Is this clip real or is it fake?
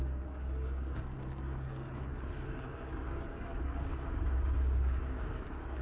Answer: fake